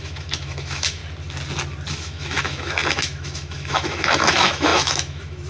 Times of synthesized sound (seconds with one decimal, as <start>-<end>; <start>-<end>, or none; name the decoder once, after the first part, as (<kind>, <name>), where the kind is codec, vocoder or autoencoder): 0.0-1.0 (autoencoder, DAC-VAE); 1.9-5.5